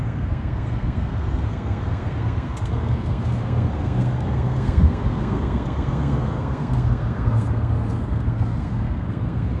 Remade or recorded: remade